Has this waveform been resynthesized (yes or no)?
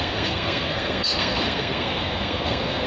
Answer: yes